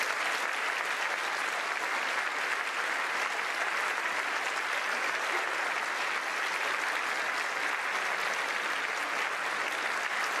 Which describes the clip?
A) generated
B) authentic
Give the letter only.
B